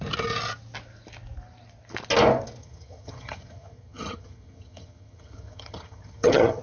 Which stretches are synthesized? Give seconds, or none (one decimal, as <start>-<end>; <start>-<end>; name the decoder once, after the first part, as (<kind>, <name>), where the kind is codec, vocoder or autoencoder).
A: 2.6-6.6 (vocoder, HiFi-GAN)

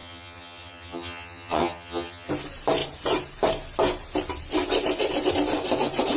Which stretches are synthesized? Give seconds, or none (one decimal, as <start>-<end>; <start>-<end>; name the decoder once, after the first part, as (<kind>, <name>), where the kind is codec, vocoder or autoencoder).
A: 0.0-2.3 (vocoder, HiFi-GAN)

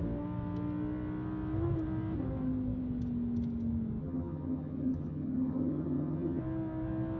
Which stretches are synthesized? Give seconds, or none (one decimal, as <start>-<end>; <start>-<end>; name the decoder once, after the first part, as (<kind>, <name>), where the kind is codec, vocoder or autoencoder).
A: 4.0-6.4 (vocoder, HiFi-GAN)